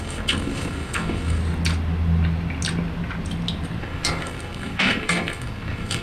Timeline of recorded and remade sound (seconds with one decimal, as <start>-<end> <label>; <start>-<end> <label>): 0.0-1.4 remade; 1.4-3.8 recorded; 3.8-6.0 remade